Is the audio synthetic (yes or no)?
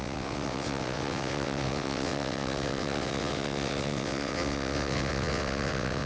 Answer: yes